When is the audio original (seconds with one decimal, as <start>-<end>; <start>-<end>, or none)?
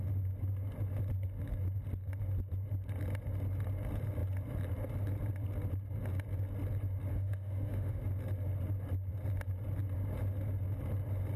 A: 0.0-7.1; 8.0-11.4